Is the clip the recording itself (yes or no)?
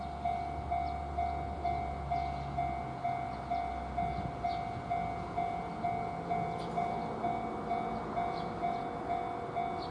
yes